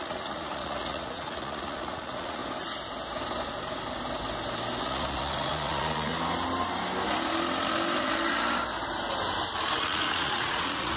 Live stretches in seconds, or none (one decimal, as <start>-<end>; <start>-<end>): 2.4-4.8; 6.1-9.8